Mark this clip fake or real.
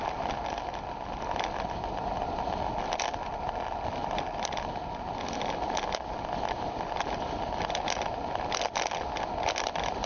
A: real